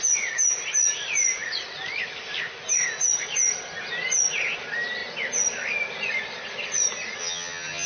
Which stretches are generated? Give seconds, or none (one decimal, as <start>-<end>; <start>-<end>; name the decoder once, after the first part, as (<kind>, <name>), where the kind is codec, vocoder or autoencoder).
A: 7.2-7.9 (vocoder, HiFi-GAN)